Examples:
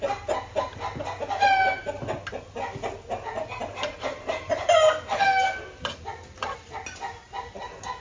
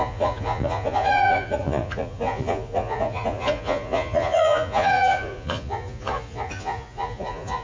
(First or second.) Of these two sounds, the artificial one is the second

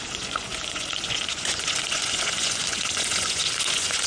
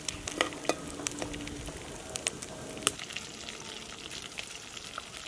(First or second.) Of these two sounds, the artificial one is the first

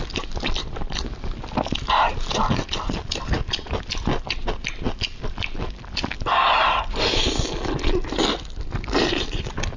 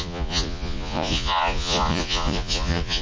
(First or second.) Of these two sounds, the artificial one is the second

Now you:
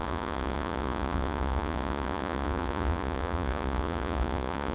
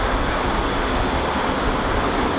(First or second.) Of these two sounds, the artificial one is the first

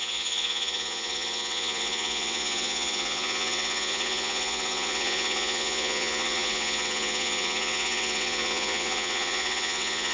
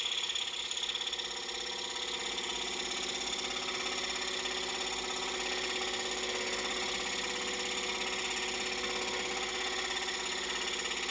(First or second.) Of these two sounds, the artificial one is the first